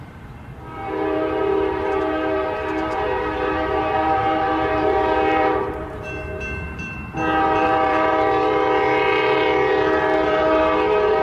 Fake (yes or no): yes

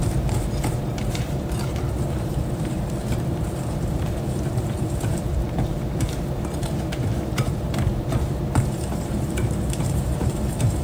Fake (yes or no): yes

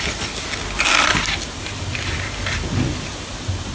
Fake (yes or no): no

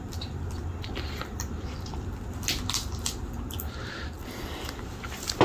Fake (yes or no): no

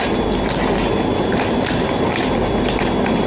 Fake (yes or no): no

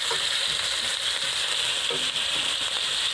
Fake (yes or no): yes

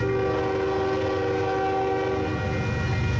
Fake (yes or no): no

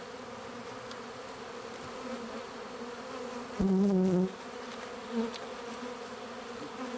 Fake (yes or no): no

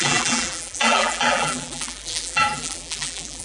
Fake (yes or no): yes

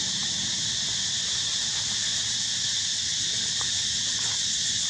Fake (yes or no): no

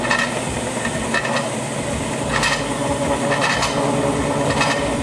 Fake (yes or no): no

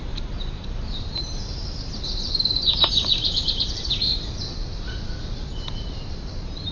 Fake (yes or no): yes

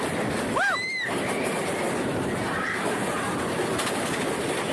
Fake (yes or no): no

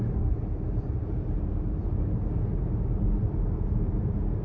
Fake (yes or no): yes